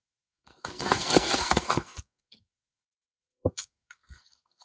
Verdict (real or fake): fake